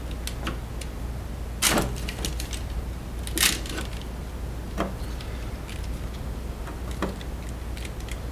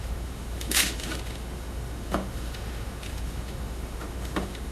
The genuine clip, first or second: first